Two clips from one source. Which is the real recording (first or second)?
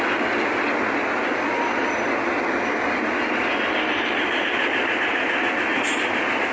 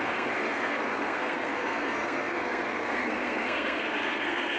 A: first